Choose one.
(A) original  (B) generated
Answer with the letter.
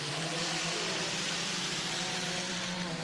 B